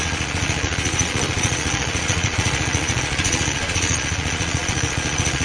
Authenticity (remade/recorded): remade